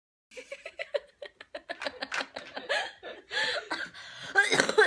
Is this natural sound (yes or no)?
yes